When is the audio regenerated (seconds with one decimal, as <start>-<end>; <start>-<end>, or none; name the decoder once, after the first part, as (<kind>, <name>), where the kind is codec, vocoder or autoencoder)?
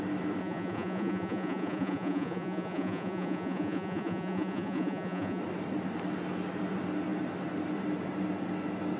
0.4-5.4 (vocoder, Vocos)